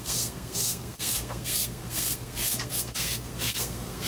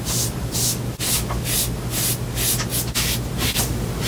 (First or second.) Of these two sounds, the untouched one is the second